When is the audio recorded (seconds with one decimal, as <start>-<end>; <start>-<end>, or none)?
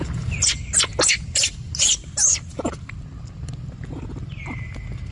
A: 0.0-5.1